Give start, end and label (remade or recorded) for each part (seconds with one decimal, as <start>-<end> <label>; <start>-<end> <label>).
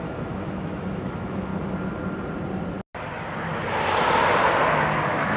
0.0-1.5 remade; 1.5-4.7 recorded; 4.7-5.4 remade